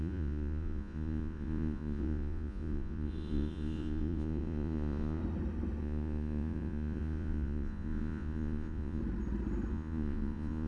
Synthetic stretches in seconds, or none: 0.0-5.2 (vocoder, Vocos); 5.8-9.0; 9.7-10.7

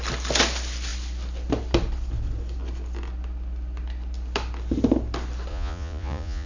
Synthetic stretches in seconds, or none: 5.5-6.5 (vocoder, Vocos)

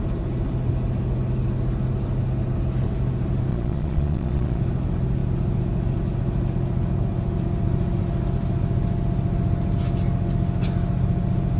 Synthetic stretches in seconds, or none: 3.5-4.6 (vocoder, Vocos)